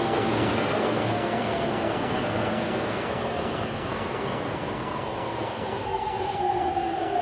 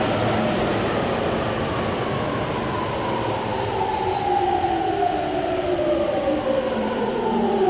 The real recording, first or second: second